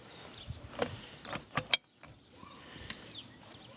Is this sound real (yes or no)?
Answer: yes